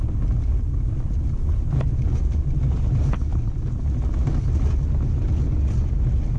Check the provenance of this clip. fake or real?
real